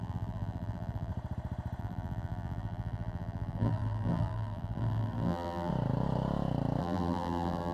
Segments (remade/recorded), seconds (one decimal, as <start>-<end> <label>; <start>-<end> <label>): 0.0-1.1 remade; 1.1-1.8 recorded; 1.8-5.7 remade; 5.7-6.8 recorded; 6.8-7.7 remade